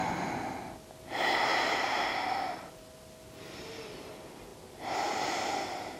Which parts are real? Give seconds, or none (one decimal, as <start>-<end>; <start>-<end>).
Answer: 0.0-1.5; 2.7-6.0